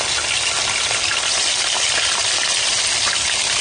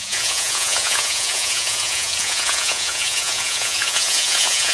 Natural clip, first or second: first